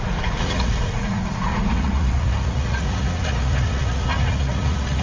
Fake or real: fake